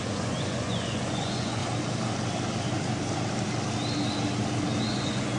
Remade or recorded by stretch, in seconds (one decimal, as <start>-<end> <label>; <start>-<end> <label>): 0.0-1.6 remade; 1.6-4.8 recorded; 4.8-5.4 remade